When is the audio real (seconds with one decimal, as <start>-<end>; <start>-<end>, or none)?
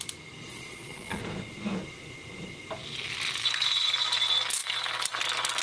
0.0-0.5; 1.2-5.6